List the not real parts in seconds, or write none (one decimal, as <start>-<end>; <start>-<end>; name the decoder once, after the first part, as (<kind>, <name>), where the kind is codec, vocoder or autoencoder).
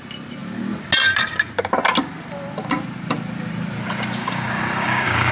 4.2-5.3 (codec, DAC)